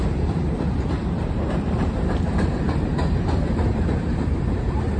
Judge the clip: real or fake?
fake